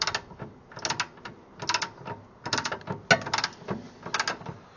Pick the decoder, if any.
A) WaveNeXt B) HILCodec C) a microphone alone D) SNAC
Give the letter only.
C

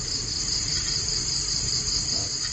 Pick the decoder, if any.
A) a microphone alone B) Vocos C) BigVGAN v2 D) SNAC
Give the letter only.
C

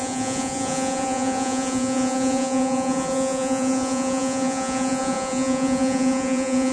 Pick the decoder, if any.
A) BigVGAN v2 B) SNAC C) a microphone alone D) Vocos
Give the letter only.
D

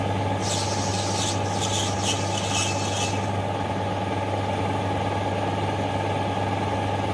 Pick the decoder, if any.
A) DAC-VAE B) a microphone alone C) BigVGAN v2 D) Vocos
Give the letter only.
B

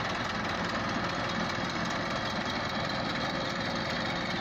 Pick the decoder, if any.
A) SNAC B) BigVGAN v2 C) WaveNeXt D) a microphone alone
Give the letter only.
D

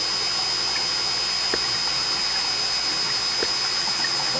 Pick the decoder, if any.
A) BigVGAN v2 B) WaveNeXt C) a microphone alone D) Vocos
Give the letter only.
C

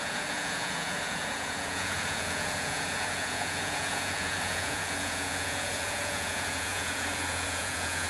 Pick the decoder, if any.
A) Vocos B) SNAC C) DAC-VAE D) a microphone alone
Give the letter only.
A